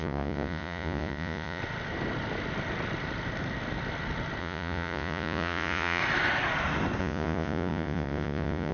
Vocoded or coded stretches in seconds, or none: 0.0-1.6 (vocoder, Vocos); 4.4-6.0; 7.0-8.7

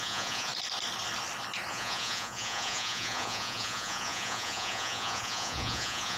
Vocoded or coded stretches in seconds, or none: 0.0-0.5 (vocoder, Vocos); 1.7-6.2

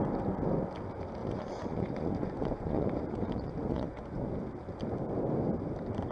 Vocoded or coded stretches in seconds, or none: 1.2-4.3 (vocoder, Vocos)

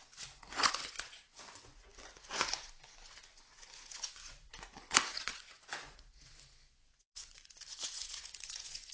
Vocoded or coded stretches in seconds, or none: 0.0-8.9 (vocoder, Vocos)

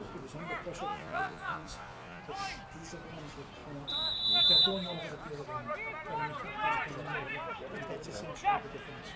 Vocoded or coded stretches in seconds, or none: 0.9-2.2 (vocoder, Vocos)

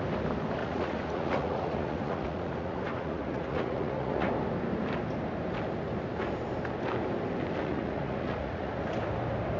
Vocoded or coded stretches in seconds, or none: 0.6-4.3 (vocoder, Vocos); 7.6-8.7

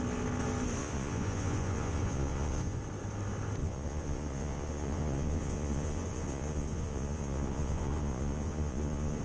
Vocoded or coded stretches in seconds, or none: 0.8-2.8 (vocoder, Vocos); 3.6-9.2

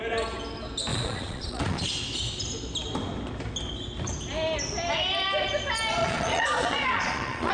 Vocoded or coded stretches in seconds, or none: 0.9-1.9 (vocoder, Vocos); 6.0-7.5